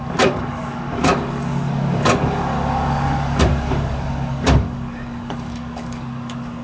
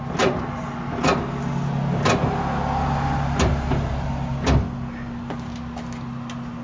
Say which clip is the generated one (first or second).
first